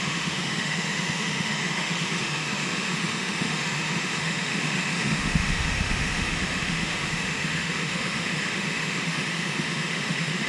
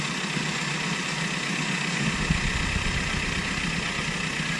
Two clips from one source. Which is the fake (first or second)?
first